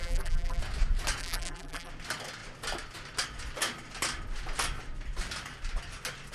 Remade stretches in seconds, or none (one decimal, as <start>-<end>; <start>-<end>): 0.0-0.6; 1.2-1.9